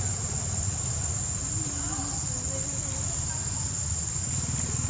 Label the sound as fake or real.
real